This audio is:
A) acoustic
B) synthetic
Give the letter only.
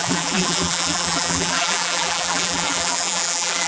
B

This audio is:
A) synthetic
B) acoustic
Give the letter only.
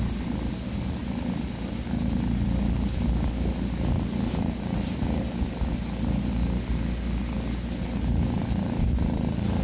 B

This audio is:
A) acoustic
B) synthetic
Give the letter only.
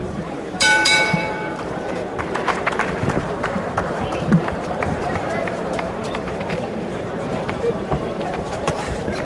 B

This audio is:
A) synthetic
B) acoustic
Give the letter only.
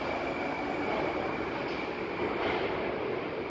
B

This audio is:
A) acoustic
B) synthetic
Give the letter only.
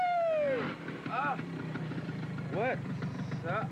A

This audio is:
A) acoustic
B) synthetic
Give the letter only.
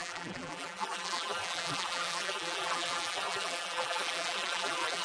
B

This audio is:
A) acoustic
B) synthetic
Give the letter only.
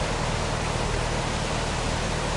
A